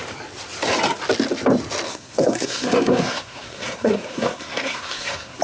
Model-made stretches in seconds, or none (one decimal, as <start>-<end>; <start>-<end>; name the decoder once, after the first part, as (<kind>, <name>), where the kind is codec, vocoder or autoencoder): 1.9-5.4 (codec, SNAC)

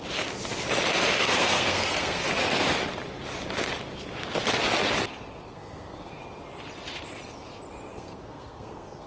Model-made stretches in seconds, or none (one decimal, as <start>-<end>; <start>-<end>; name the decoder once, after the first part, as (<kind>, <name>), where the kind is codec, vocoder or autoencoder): 1.2-2.2 (codec, SNAC); 5.5-6.2; 7.9-9.1

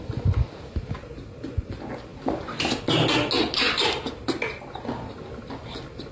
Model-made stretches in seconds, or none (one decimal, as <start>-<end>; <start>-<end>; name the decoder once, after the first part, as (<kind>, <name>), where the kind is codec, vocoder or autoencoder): none

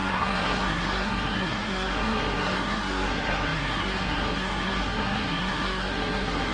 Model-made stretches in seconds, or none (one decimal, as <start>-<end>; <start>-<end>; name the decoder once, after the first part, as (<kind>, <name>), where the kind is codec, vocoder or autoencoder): 0.0-6.5 (codec, SNAC)

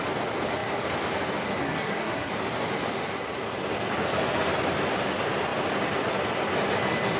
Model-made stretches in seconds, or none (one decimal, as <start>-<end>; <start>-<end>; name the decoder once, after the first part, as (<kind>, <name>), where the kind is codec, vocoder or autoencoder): 1.6-2.3 (codec, SNAC)